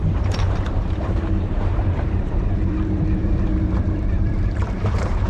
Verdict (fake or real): fake